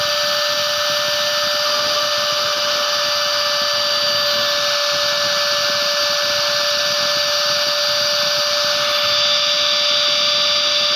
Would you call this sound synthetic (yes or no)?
no